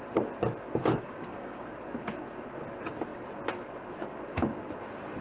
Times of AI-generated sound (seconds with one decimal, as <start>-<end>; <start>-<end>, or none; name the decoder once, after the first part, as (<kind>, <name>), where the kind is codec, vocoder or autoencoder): 0.8-1.6 (codec, DAC)